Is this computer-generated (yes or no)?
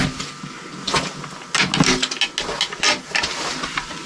no